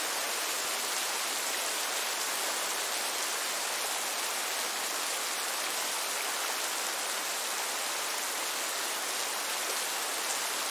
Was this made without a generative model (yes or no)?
yes